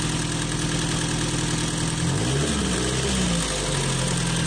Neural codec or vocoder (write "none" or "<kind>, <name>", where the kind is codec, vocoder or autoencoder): none